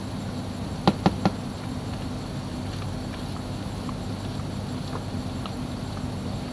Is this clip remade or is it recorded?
recorded